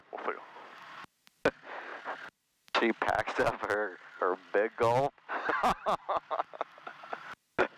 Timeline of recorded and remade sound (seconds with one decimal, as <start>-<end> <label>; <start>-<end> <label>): 0.0-7.8 recorded